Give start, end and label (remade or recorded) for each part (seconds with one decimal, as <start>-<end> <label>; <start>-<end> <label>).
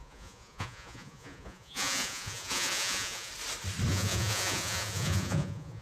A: 0.0-3.3 remade; 3.3-3.9 recorded; 3.9-5.8 remade